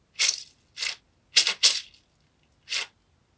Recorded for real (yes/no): yes